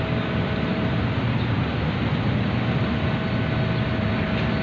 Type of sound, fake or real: real